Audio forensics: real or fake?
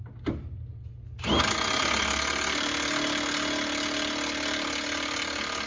real